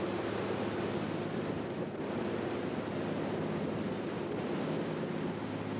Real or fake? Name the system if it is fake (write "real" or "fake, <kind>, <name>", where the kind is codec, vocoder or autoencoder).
real